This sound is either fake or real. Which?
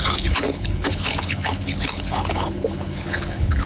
fake